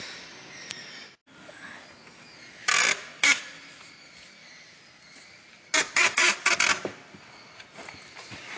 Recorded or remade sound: recorded